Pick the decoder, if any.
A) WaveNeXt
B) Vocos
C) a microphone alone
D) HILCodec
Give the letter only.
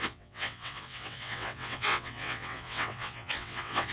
A